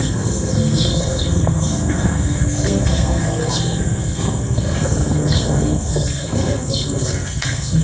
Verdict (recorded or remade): remade